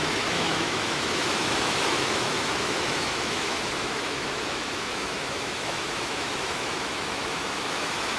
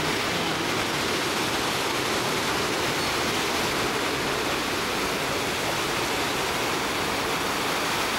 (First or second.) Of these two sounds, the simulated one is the first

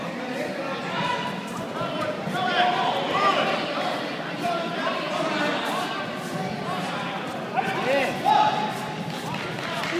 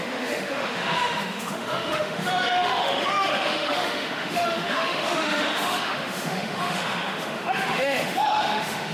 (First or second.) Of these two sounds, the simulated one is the second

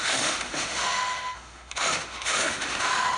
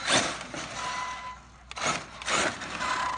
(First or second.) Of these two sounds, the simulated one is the first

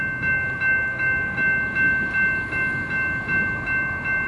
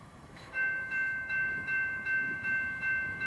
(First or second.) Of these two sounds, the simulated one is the second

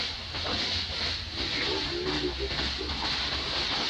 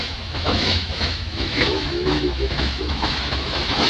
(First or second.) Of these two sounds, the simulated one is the second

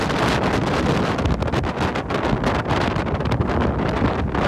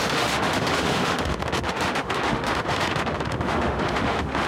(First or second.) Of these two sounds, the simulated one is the second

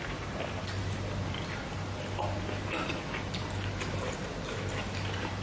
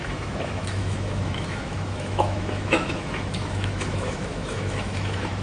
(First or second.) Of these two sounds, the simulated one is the second